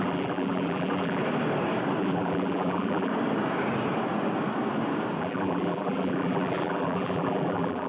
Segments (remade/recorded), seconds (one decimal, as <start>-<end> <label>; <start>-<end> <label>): 0.0-1.2 remade; 1.2-2.0 recorded; 2.0-3.1 remade; 3.1-5.2 recorded; 5.2-7.9 remade